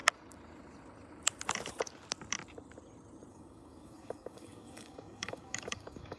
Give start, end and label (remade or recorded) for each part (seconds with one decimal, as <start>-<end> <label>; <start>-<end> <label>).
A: 0.0-3.3 recorded; 3.3-6.2 remade